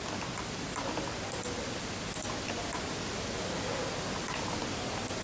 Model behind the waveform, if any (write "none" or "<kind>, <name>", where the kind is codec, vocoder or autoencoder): none